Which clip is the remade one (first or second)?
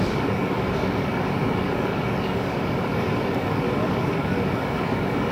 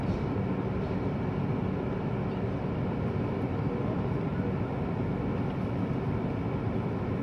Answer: first